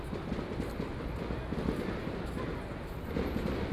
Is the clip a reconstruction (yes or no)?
no